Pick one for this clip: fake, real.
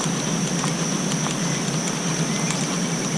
real